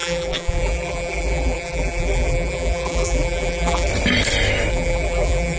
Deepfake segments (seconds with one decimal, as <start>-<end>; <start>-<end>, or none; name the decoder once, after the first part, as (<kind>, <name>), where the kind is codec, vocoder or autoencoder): 0.0-3.9 (vocoder, BigVGAN v2); 4.7-5.6